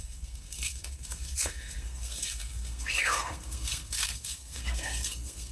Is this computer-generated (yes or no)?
yes